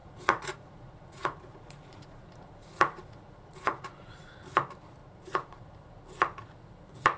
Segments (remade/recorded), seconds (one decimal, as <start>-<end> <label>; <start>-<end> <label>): 0.0-4.3 remade; 4.3-5.0 recorded; 5.0-5.6 remade; 5.6-7.2 recorded